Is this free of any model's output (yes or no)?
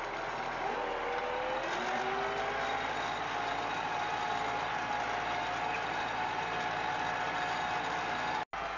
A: yes